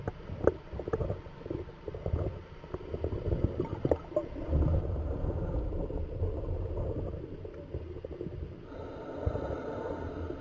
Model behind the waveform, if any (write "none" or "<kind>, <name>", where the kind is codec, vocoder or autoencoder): none